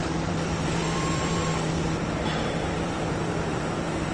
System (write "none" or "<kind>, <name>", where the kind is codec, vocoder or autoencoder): vocoder, BigVGAN v2